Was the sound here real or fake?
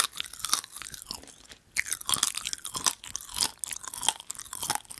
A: real